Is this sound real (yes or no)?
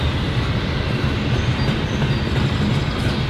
yes